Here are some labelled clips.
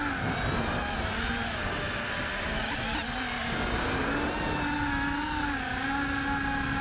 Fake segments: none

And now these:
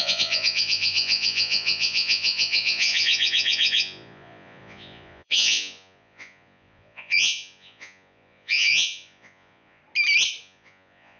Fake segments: 0.0-9.8 (vocoder, Vocos); 10.4-11.2

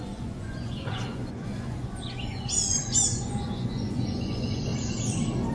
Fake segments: 0.0-4.7 (vocoder, Vocos)

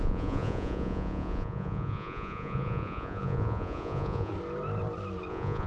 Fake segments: 0.0-4.3 (vocoder, Vocos); 5.3-5.7

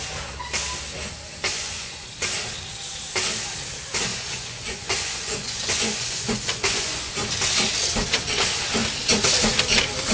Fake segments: 1.5-2.1 (vocoder, Vocos); 4.1-7.1